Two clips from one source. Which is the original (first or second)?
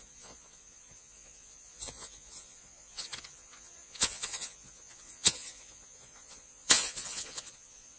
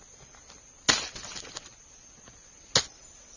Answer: second